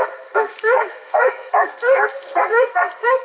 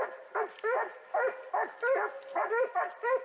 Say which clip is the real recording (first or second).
second